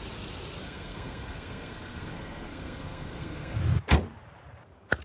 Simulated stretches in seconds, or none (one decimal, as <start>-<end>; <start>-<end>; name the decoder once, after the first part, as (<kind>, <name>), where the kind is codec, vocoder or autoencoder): 0.6-3.6 (codec, SNAC)